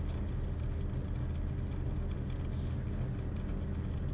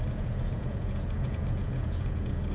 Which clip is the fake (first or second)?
second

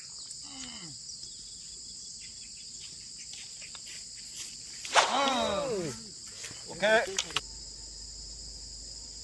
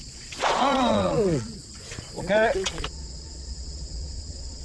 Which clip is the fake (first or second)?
second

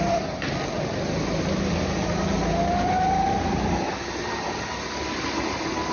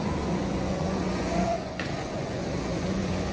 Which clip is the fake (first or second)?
second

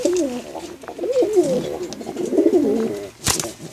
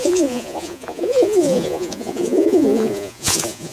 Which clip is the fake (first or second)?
second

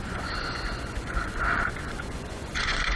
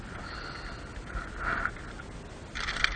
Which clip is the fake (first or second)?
first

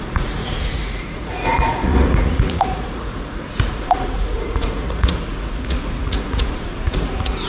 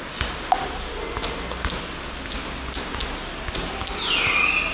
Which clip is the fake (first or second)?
first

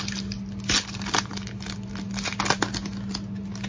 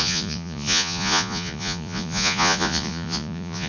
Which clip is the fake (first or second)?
second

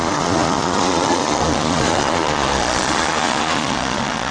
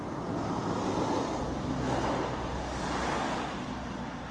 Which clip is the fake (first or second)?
first